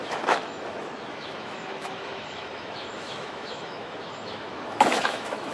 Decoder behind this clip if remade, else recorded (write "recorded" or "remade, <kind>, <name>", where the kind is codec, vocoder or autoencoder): remade, autoencoder, DAC-VAE